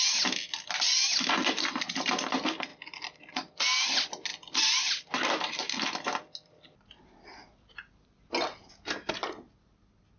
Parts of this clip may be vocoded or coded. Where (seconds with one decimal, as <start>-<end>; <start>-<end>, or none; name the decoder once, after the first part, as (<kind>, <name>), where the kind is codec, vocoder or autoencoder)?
none